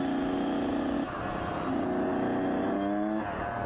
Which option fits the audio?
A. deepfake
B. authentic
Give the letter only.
B